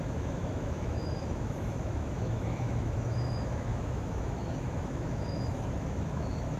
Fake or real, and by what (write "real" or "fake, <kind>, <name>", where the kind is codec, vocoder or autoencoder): fake, autoencoder, DAC-VAE